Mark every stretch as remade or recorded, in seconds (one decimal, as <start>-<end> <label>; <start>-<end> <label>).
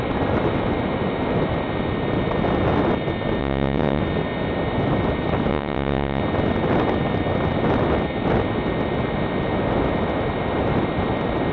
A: 0.0-3.4 recorded; 3.4-4.0 remade; 4.0-5.5 recorded; 5.5-6.2 remade; 6.2-11.5 recorded